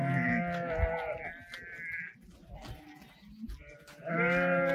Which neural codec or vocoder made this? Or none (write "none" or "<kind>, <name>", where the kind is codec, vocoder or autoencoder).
none